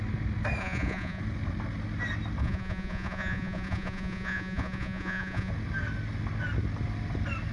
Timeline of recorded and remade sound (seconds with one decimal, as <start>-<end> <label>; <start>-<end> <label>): 0.0-0.6 recorded; 0.6-1.2 remade; 1.2-2.4 recorded; 2.4-5.5 remade; 5.5-7.5 recorded